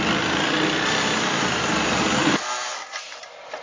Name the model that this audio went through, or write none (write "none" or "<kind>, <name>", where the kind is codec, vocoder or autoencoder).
none